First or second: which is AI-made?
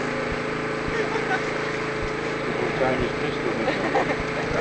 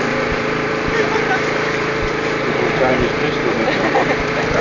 second